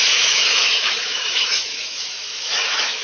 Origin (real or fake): fake